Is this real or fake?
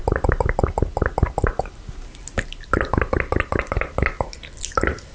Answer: real